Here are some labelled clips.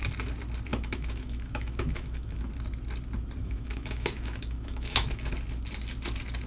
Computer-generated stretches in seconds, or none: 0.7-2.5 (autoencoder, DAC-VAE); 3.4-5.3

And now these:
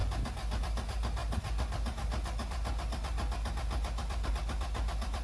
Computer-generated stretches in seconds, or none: none

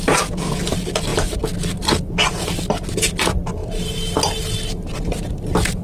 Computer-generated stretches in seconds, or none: none

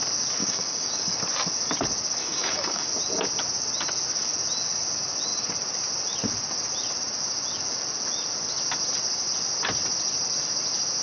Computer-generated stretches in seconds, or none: 0.4-1.2 (codec, DAC); 2.2-2.9

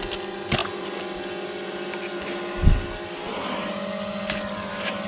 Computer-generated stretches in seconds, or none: none